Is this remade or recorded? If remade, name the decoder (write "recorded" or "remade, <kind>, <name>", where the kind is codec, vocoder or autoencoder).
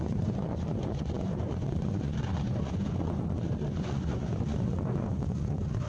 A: remade, vocoder, Vocos